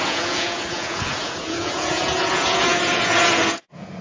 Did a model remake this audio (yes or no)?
yes